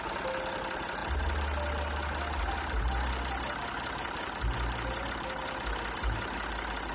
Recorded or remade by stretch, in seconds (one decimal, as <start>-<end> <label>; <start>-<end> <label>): 0.0-6.9 recorded